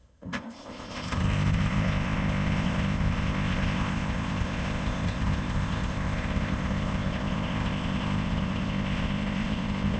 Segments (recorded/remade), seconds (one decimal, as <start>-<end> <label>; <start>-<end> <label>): 0.0-10.0 remade